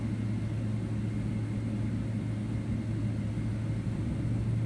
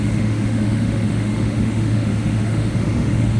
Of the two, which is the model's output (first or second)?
second